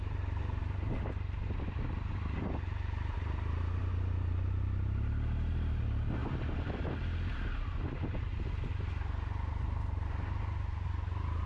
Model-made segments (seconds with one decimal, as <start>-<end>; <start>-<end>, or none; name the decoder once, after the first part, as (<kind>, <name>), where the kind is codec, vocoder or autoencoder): 6.2-8.3 (vocoder, BigVGAN v2)